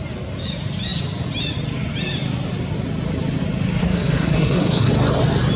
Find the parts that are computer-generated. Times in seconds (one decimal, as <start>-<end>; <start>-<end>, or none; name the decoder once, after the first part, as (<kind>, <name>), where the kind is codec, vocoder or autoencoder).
3.8-4.9 (codec, SNAC)